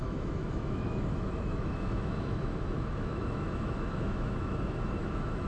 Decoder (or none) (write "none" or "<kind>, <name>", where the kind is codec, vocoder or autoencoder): autoencoder, DAC-VAE